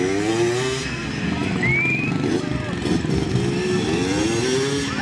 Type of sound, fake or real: real